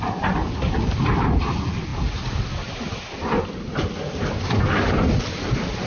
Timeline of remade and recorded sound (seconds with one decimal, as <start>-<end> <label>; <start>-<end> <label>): 0.0-5.9 recorded